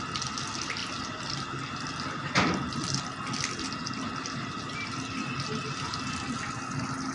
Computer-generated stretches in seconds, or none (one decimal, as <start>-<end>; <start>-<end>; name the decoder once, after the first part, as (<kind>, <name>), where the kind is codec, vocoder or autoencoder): none